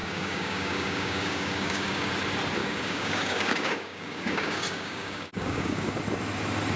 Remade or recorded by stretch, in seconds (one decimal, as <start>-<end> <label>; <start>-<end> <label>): 0.0-2.1 remade; 2.1-2.6 recorded; 2.6-5.9 remade; 5.9-6.8 recorded